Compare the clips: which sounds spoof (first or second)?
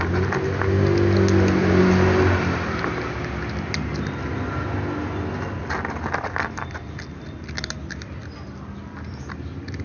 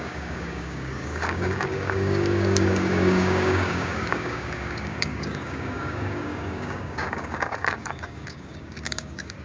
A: second